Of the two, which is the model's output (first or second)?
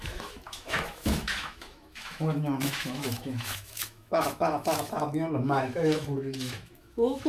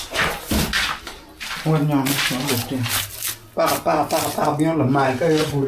first